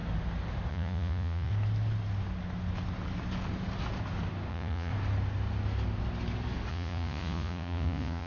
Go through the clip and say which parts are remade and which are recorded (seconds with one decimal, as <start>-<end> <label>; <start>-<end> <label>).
0.0-0.7 recorded; 0.7-1.5 remade; 1.5-4.5 recorded; 4.5-4.9 remade; 4.9-6.7 recorded; 6.7-8.3 remade